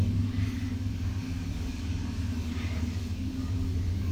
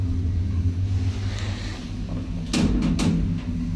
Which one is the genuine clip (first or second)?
second